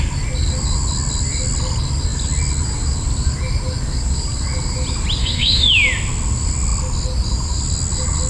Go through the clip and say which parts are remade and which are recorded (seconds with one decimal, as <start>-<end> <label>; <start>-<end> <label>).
0.0-5.2 recorded; 5.2-5.7 remade; 5.7-8.3 recorded